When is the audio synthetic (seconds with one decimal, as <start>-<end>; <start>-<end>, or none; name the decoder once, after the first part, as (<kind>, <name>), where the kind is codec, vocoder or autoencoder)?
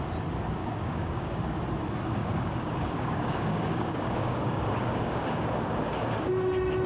0.6-1.4 (codec, DAC); 2.2-6.3